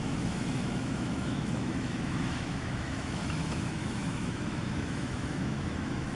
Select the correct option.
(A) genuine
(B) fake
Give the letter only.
B